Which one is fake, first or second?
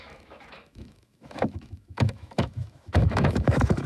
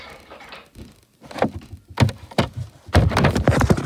first